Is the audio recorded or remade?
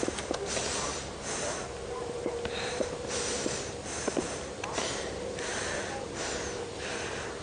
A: recorded